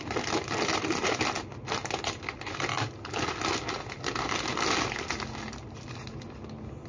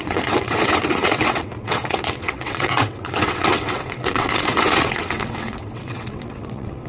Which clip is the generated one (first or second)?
second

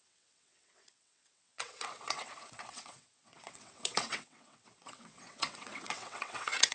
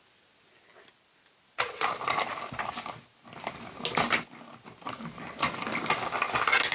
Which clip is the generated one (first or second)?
first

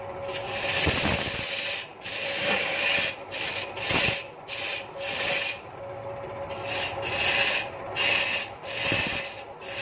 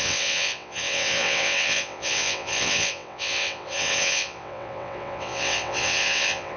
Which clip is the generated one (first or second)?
second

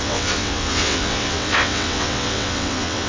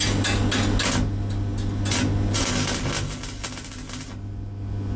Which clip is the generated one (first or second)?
first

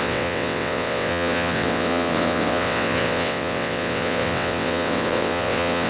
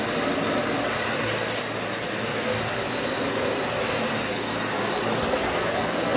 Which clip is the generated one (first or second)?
first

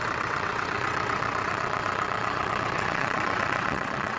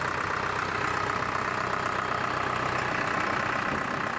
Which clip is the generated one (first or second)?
first